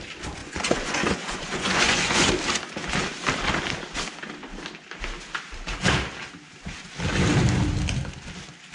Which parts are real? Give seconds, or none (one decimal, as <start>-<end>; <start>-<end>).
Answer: 0.0-0.4; 2.3-8.7